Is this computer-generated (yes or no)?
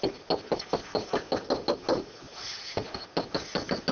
no